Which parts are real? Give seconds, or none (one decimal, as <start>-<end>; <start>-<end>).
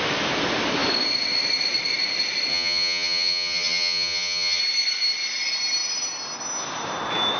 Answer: 0.0-2.5; 4.6-7.4